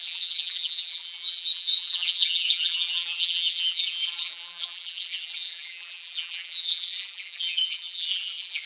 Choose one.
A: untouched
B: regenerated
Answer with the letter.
B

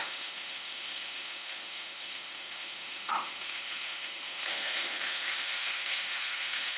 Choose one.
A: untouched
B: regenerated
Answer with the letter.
B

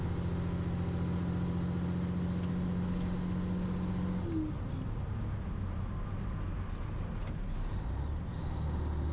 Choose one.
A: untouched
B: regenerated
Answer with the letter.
A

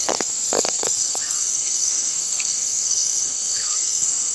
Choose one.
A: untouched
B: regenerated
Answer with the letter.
B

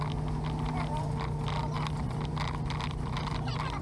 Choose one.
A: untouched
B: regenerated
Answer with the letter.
A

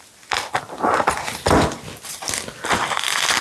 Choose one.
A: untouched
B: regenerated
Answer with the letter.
A